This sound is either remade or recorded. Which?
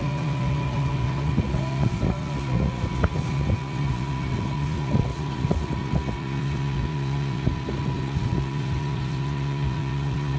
remade